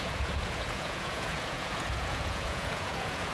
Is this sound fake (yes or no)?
yes